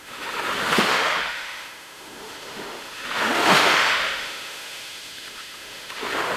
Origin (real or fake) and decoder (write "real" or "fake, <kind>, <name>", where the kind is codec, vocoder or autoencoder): fake, autoencoder, DAC-VAE